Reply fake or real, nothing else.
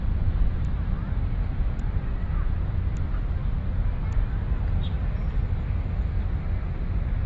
real